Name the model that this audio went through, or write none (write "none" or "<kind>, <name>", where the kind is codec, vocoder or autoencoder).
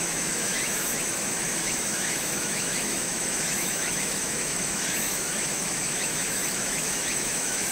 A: autoencoder, DAC-VAE